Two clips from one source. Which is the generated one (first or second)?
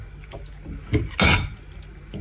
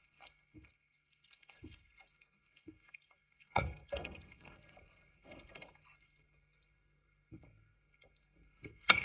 second